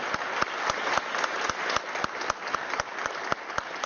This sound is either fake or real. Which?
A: real